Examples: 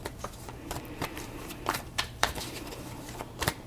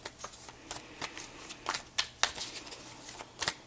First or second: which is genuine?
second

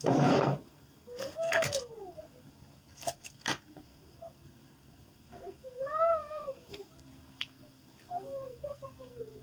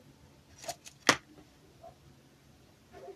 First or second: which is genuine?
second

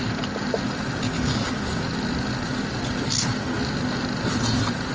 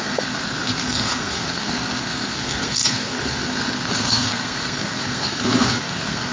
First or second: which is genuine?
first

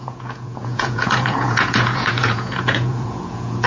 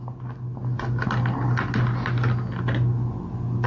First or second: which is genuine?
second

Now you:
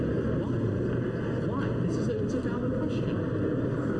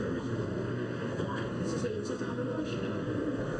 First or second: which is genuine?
first